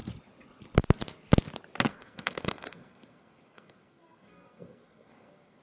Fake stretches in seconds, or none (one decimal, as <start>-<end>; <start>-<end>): 1.9-5.6